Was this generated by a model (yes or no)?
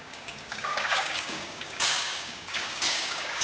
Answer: yes